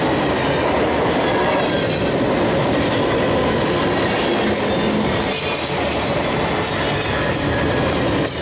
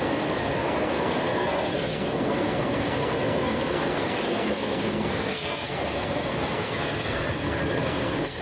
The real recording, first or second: first